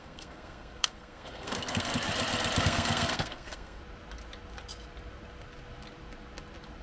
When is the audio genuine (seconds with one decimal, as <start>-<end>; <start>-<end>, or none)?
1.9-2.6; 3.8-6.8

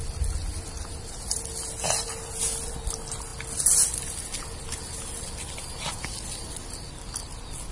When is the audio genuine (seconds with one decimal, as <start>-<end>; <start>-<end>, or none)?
0.0-7.7

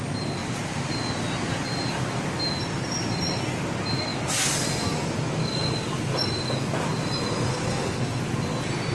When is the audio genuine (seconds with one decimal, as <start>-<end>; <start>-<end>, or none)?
0.0-7.5; 8.2-8.9